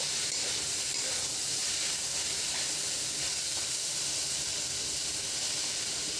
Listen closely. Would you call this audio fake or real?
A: real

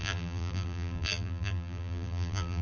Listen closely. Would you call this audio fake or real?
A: fake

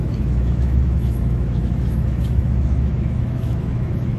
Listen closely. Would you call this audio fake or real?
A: fake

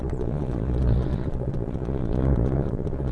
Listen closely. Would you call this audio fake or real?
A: fake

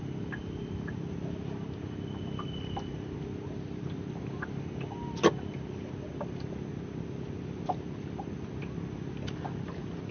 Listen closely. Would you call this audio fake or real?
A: real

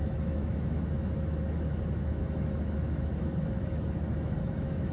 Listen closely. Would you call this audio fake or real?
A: fake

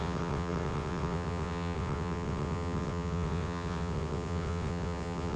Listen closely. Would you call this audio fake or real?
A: fake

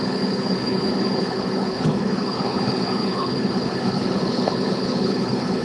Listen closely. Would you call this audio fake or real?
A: fake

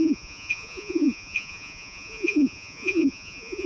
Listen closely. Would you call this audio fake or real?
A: fake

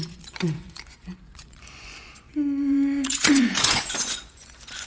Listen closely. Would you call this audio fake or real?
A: fake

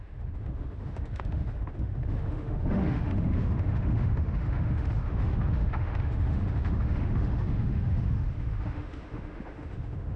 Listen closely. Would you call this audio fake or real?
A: fake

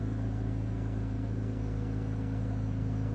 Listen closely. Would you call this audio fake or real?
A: fake